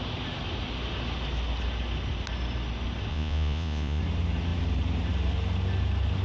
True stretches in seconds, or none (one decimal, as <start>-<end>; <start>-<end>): 0.0-3.1; 4.0-6.2